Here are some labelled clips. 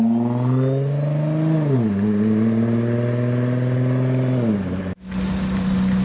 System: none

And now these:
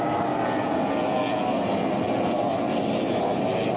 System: none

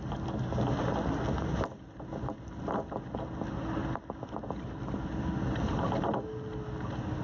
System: none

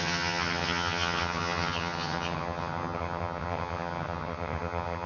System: vocoder, HiFi-GAN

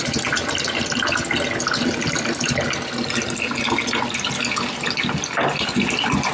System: none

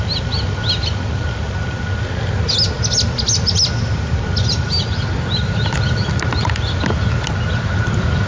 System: none